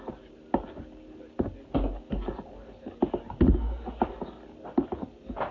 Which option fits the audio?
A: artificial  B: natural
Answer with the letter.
B